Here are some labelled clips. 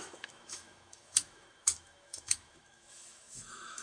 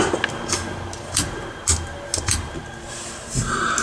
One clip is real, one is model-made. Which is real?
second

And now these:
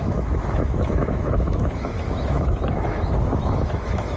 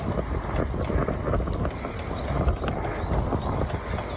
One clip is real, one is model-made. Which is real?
second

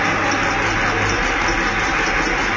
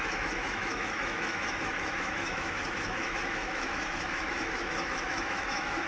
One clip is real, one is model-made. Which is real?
first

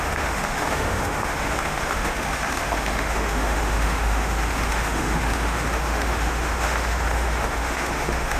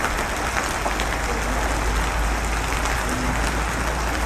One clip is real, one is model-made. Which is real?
second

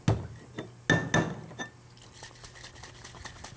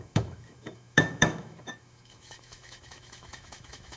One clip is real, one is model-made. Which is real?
first